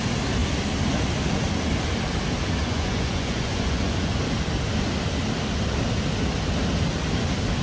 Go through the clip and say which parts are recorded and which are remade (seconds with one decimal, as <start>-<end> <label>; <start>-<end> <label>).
0.0-2.6 recorded; 2.6-4.2 remade; 4.2-7.6 recorded